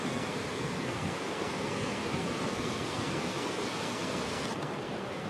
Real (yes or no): no